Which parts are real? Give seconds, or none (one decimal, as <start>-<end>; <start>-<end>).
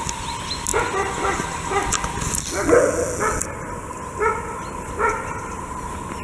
0.0-6.2